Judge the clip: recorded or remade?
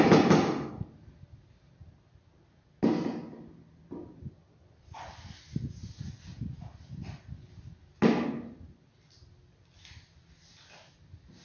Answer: recorded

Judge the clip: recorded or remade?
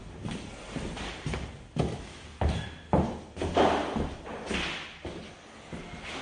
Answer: recorded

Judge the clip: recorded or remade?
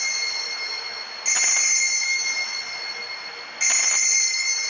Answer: recorded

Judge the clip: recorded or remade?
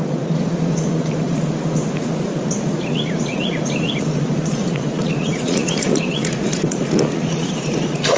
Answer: remade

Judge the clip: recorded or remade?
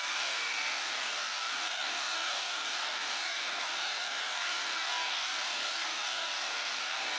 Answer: remade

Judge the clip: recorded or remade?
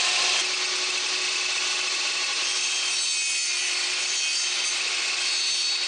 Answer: recorded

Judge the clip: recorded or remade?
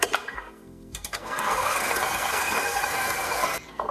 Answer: remade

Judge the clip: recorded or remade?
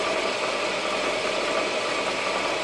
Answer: recorded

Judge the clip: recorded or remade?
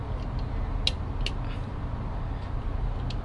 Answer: recorded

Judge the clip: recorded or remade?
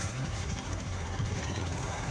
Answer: remade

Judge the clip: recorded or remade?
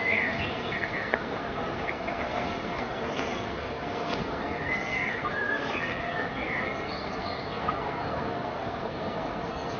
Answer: remade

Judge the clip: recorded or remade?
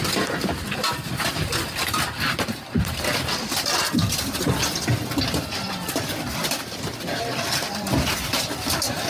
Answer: remade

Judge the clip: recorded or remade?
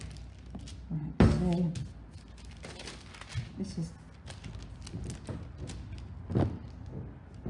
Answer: recorded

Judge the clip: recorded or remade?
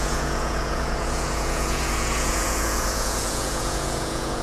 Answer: remade